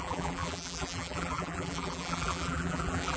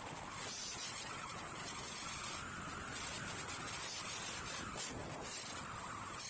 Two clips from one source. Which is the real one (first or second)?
second